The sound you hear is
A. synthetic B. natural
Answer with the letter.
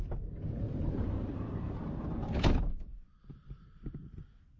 B